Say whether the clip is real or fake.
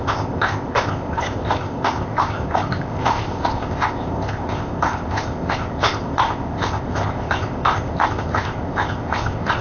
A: fake